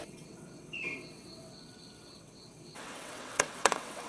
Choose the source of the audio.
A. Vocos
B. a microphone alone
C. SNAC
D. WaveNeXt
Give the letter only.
D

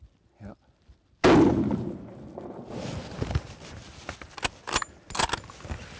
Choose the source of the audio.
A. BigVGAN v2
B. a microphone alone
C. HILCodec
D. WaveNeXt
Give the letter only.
B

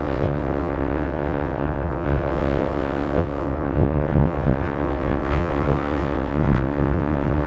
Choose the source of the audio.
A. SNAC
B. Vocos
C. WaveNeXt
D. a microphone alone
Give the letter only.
C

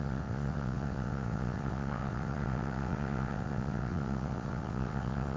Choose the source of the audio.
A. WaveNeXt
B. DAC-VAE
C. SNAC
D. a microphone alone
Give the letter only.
A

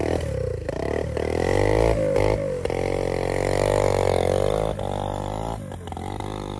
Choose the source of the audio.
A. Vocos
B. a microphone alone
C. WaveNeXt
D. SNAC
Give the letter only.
B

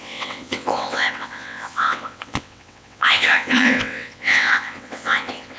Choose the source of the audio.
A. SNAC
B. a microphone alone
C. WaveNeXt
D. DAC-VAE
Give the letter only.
C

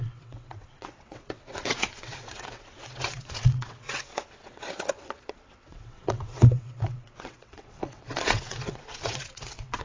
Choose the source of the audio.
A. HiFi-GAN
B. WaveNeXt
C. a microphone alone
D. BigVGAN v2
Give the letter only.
B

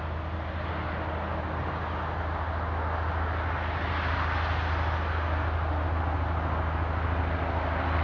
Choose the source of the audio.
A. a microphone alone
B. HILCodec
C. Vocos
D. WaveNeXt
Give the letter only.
A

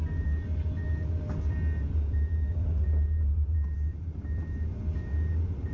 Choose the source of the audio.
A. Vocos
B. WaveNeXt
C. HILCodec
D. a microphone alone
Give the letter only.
D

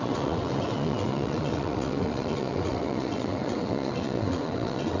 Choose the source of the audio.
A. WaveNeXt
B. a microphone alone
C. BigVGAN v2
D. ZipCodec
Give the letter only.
A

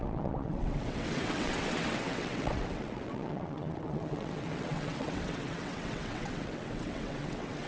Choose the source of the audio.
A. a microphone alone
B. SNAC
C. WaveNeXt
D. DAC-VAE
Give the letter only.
C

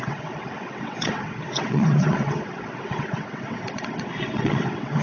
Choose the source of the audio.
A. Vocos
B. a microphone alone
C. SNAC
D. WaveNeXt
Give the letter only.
D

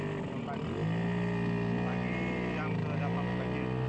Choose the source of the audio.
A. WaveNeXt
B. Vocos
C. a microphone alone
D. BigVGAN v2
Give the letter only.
C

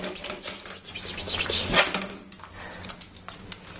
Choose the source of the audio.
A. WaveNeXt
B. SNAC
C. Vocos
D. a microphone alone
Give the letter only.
D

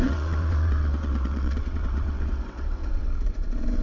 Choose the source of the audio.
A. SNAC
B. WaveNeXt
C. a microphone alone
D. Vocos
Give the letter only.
B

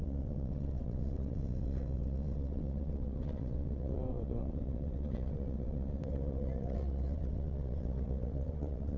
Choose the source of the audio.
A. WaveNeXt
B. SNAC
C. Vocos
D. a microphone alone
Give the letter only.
A